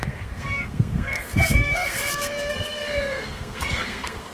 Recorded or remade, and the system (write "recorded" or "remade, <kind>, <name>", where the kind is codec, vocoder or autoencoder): remade, codec, SNAC